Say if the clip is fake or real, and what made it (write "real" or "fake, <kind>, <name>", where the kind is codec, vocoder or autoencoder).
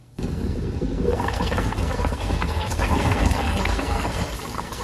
fake, codec, SNAC